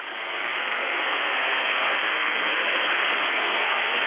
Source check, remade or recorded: remade